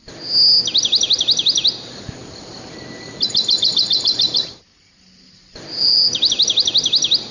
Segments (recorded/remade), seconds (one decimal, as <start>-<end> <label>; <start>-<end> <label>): 0.0-2.2 recorded; 2.2-6.3 remade; 6.3-7.3 recorded